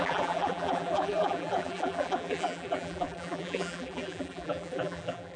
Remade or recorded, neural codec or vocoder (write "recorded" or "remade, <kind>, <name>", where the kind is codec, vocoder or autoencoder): remade, vocoder, BigVGAN v2